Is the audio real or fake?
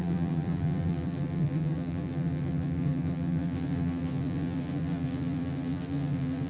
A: fake